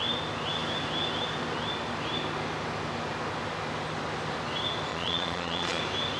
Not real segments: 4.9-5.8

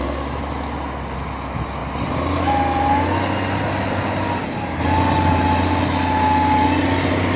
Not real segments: none

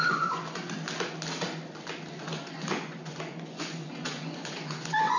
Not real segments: 0.0-0.4; 2.2-5.2